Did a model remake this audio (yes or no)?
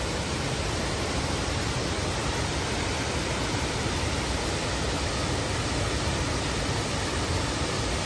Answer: no